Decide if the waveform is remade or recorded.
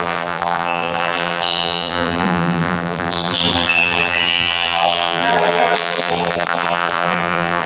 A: remade